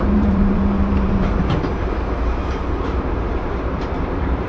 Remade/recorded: remade